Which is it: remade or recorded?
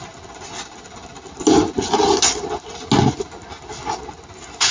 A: recorded